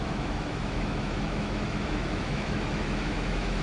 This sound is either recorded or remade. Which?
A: remade